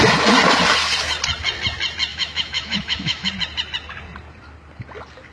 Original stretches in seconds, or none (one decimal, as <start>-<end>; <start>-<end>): 0.0-2.1; 3.3-5.3

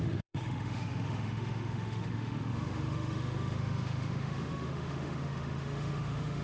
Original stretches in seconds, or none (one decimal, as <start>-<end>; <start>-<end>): none

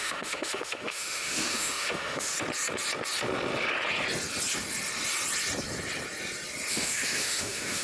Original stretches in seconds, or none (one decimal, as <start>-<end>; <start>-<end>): 2.3-6.7